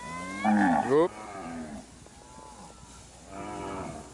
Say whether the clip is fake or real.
real